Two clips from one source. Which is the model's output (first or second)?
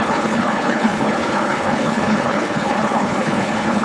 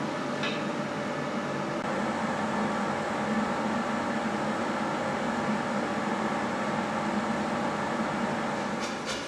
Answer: first